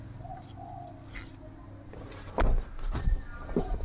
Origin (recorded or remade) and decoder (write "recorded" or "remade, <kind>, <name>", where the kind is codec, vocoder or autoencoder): recorded